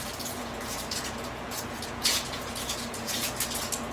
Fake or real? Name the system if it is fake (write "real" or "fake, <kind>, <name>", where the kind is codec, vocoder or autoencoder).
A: fake, vocoder, Vocos